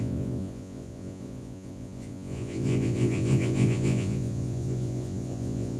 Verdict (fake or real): fake